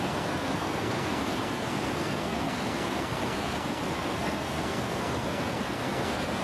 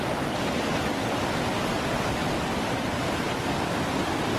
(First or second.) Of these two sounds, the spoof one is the first